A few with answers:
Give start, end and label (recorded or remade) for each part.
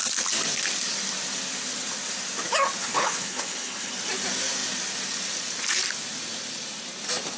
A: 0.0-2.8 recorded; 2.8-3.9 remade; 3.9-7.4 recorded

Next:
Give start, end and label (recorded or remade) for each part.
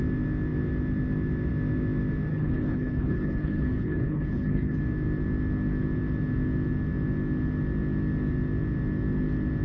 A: 0.0-2.3 recorded; 2.3-4.8 remade; 4.8-9.6 recorded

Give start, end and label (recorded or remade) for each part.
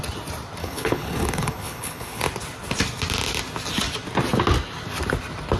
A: 0.0-0.6 recorded; 0.6-2.2 remade; 2.2-5.6 recorded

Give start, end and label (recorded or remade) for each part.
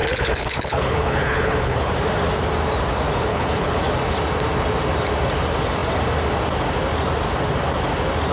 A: 0.0-1.9 remade; 1.9-3.3 recorded; 3.3-3.8 remade; 3.8-8.3 recorded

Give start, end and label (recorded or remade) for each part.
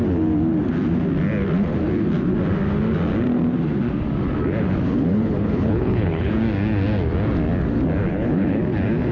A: 0.0-5.1 recorded; 5.1-6.3 remade; 6.3-8.1 recorded; 8.1-8.6 remade; 8.6-9.1 recorded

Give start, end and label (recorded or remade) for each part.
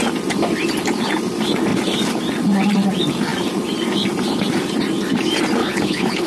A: 0.0-5.6 recorded; 5.6-6.3 remade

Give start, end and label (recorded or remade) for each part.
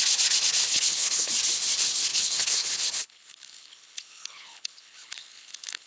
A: 0.0-0.7 recorded; 0.7-1.3 remade; 1.3-2.1 recorded; 2.1-5.9 remade